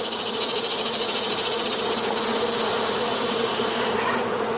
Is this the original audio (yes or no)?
no